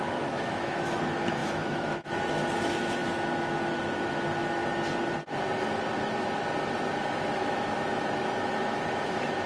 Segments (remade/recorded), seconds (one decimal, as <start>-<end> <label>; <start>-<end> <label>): 0.0-4.6 remade; 4.6-6.9 recorded; 6.9-9.5 remade